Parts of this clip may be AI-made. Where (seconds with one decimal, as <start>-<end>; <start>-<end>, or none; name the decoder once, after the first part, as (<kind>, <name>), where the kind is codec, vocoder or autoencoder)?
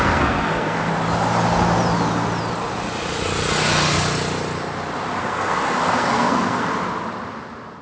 0.0-0.9 (codec, SNAC); 5.2-6.7